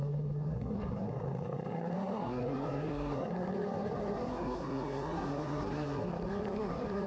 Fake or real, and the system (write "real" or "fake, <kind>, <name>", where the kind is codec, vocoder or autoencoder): fake, codec, SNAC